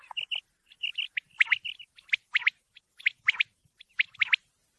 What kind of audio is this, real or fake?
real